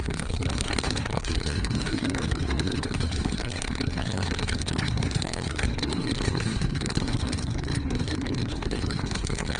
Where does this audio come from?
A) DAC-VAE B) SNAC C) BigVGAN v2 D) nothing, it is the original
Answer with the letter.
B